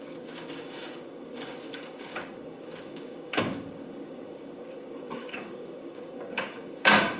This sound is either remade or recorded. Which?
remade